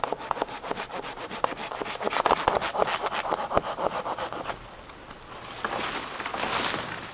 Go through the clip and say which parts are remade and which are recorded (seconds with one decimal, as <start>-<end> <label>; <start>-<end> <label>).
0.0-7.1 recorded